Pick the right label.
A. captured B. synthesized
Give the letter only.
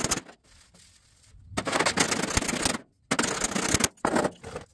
A